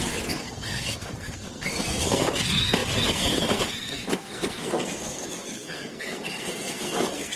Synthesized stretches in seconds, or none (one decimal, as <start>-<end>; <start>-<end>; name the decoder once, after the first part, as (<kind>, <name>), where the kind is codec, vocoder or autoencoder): 0.0-7.4 (codec, SNAC)